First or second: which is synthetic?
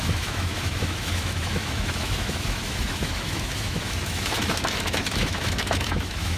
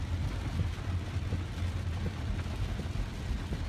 first